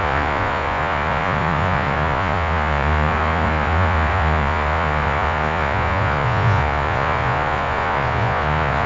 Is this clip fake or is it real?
fake